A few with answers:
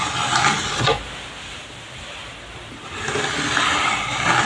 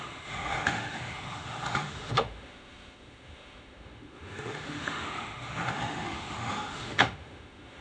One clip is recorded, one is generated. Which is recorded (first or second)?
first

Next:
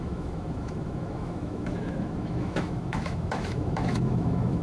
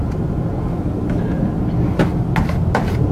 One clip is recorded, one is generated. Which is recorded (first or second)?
second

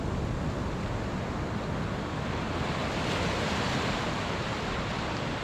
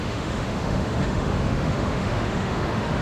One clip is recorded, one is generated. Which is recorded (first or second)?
first